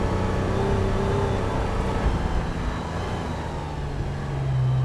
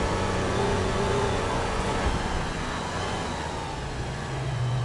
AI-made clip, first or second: second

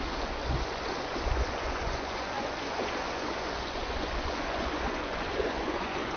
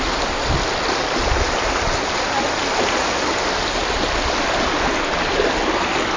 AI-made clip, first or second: first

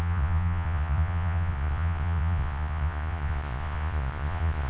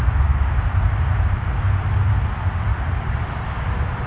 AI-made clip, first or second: first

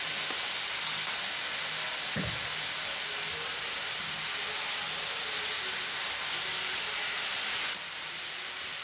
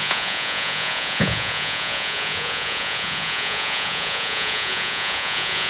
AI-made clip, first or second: second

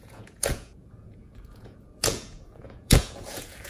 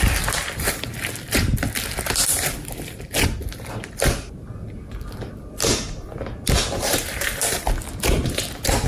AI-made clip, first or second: first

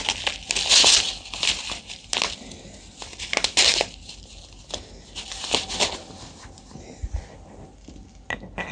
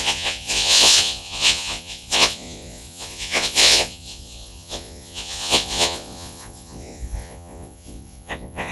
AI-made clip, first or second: second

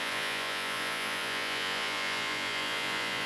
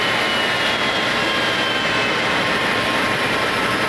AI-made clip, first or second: first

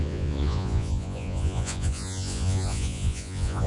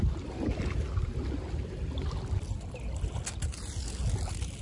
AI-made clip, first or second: first